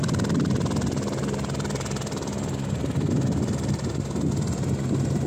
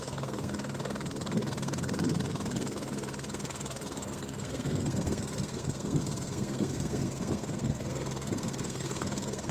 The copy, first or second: second